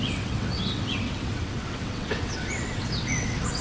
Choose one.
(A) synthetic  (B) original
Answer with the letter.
A